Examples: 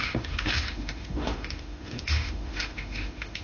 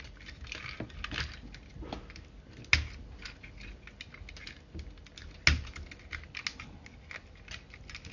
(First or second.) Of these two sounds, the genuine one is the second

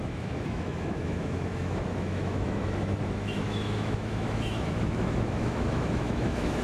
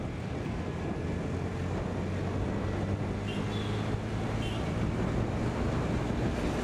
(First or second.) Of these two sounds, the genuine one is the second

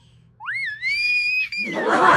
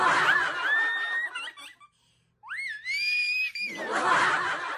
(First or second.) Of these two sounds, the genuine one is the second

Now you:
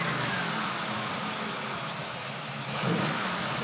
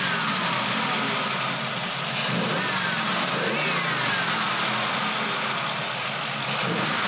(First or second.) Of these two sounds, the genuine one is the second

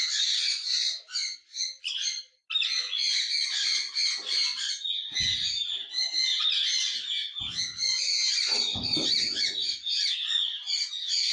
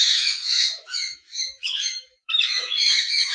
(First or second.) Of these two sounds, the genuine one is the first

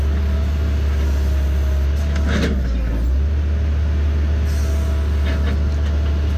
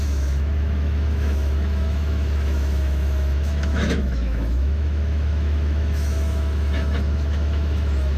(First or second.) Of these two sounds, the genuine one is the first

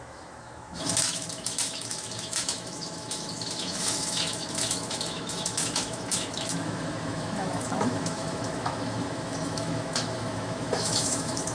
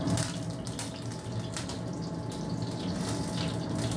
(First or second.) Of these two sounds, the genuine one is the second